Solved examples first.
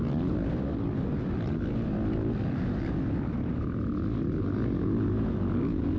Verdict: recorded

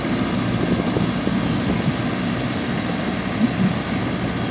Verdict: recorded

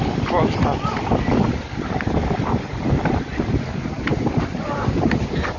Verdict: remade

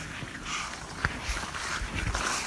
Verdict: recorded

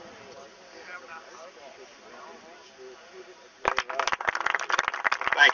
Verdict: recorded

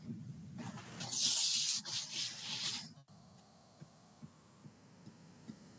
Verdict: recorded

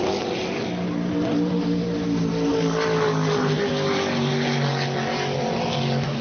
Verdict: recorded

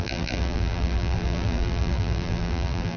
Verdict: remade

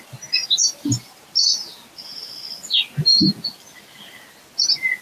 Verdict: recorded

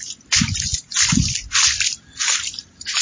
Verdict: remade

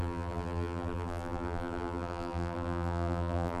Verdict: remade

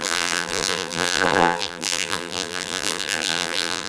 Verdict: remade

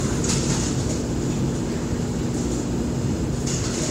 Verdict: recorded